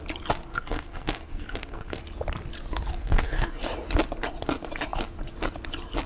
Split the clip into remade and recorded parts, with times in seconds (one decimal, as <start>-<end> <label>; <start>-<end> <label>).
0.0-0.5 recorded; 0.5-2.0 remade; 2.0-3.0 recorded; 3.0-3.6 remade; 3.6-6.1 recorded